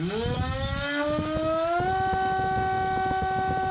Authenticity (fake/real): real